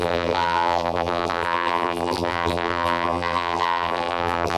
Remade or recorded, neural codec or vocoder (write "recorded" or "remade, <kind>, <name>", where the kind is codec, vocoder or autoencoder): remade, vocoder, BigVGAN v2